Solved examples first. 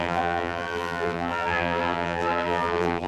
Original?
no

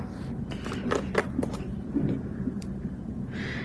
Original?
yes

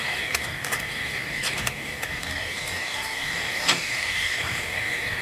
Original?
no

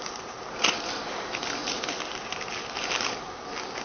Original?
yes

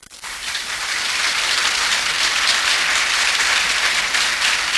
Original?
no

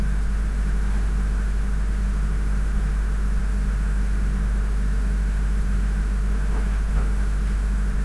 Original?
no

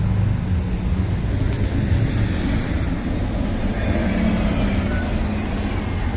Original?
yes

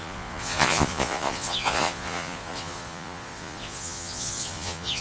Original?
no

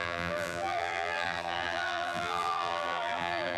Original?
no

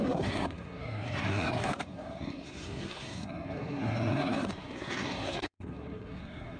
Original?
no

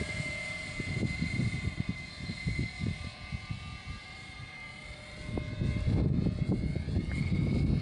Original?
no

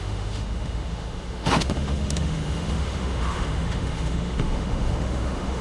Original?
no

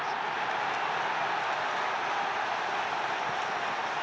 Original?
yes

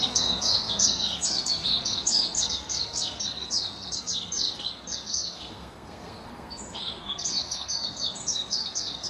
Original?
no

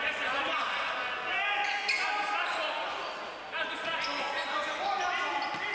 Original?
yes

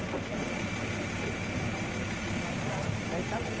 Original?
yes